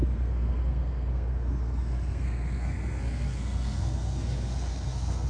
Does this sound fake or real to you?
fake